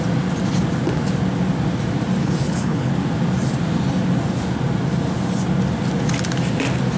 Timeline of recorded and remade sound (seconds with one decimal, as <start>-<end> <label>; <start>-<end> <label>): 0.0-2.2 recorded; 2.2-2.9 remade; 2.9-7.0 recorded